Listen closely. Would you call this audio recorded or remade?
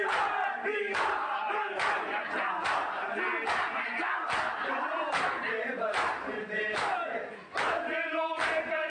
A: recorded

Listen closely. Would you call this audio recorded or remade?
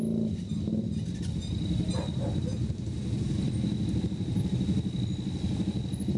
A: recorded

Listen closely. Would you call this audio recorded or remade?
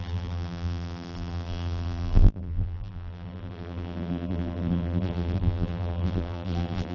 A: remade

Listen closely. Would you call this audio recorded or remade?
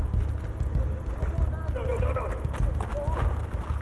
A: recorded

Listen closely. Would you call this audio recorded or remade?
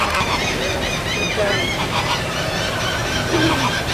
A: remade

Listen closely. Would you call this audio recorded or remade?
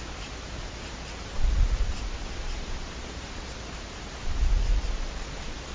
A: remade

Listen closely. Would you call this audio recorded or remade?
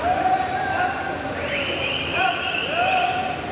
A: recorded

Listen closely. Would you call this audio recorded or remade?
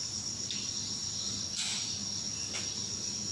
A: recorded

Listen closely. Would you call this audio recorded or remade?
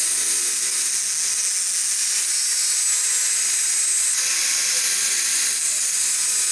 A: recorded